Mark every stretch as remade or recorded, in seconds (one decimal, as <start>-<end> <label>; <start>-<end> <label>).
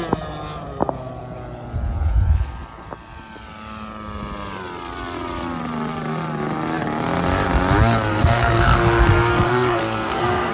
0.0-8.1 recorded; 8.1-10.5 remade